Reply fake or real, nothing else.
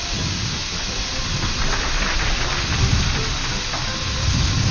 real